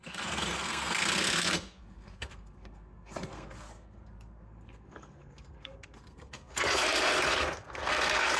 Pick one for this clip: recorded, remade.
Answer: remade